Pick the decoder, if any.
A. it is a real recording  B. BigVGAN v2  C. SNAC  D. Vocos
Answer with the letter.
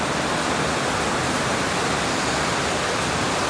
A